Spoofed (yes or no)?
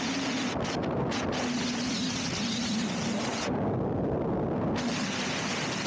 no